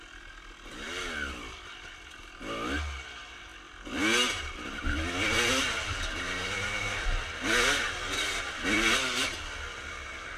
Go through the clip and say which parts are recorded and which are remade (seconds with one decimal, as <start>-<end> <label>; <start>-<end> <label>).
0.0-10.4 recorded